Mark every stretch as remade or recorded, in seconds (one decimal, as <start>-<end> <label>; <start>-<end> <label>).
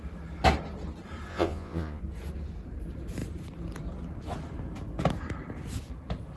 0.0-1.3 recorded; 1.3-2.0 remade; 2.0-6.4 recorded